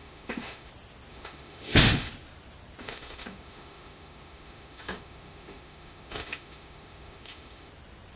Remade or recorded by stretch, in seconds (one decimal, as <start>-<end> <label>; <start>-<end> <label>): 0.0-0.7 remade; 0.7-1.1 recorded; 1.1-2.1 remade; 2.1-2.8 recorded; 2.8-7.7 remade; 7.7-8.2 recorded